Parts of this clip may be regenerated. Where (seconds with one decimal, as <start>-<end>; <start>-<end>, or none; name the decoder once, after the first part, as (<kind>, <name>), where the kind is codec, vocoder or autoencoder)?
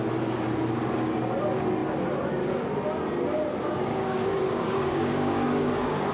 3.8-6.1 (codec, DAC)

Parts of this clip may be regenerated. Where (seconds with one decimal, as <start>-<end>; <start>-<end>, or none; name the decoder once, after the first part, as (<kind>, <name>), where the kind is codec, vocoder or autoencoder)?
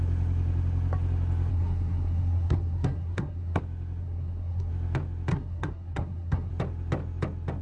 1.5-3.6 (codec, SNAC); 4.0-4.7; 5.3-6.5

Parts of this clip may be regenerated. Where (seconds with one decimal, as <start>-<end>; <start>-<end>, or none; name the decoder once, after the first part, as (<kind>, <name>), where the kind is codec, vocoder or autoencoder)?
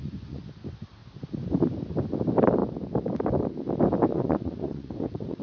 0.0-0.5 (vocoder, Vocos); 4.1-5.4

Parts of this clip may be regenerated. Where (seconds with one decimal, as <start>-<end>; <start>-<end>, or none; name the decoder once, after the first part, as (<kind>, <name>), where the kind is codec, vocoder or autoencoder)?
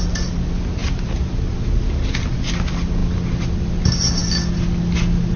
0.8-2.3 (vocoder, BigVGAN v2)